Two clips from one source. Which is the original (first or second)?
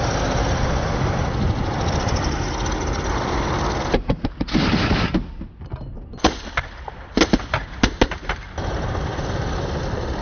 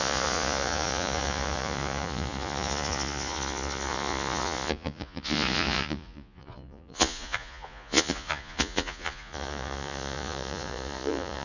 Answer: first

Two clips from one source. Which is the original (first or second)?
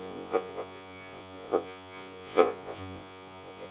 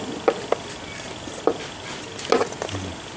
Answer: second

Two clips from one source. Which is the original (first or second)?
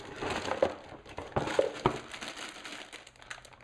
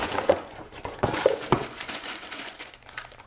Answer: first